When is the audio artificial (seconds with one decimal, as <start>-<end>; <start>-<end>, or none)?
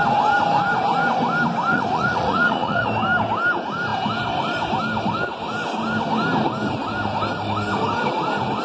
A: 1.7-2.9